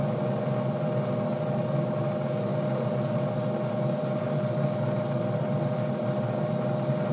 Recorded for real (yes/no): yes